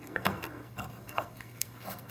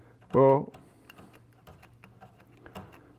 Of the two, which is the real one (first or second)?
second